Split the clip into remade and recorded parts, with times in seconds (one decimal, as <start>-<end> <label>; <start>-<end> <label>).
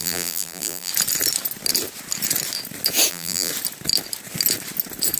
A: 0.0-0.9 remade; 0.9-3.1 recorded; 3.1-3.5 remade; 3.5-5.2 recorded